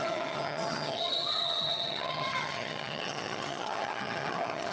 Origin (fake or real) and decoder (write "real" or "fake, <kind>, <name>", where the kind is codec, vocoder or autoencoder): fake, vocoder, HiFi-GAN